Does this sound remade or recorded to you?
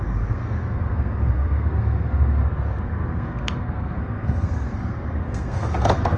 remade